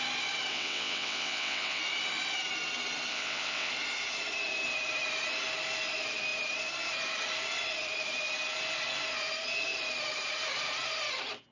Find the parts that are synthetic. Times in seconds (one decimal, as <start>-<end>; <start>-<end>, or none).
0.5-1.8; 3.1-3.7